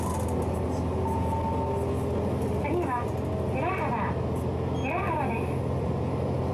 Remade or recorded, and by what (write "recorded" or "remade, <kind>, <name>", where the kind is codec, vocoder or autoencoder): recorded